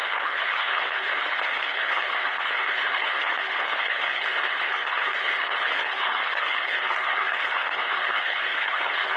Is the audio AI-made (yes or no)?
yes